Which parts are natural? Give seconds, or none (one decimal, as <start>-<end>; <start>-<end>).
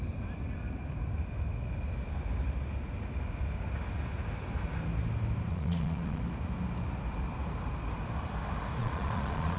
0.0-5.5; 6.2-8.8